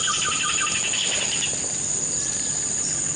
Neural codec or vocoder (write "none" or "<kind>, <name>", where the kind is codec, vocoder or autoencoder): none